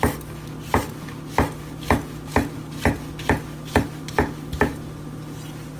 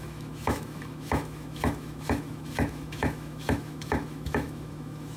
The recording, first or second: first